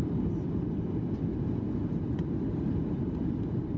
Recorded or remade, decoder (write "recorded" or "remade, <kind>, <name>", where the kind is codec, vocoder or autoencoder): recorded